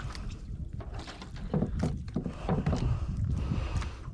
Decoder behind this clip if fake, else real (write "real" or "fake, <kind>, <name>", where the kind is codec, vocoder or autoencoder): real